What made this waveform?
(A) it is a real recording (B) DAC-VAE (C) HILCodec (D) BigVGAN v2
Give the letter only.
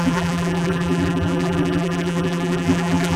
D